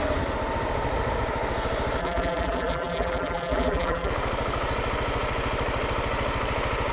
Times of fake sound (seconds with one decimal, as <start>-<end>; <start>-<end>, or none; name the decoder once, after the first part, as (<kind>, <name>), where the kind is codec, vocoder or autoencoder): 2.0-4.1 (vocoder, BigVGAN v2)